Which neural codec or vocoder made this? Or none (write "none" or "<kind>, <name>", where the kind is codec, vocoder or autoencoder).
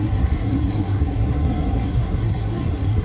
codec, SNAC